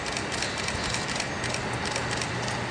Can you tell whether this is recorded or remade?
recorded